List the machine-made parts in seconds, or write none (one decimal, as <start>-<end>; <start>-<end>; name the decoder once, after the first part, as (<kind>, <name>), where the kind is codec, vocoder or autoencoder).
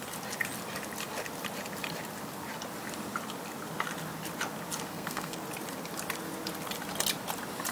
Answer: 4.9-5.4 (codec, SNAC)